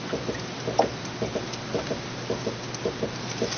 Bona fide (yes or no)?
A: yes